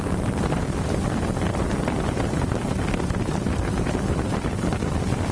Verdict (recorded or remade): remade